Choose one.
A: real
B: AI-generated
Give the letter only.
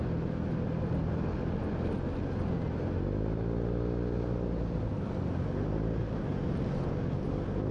A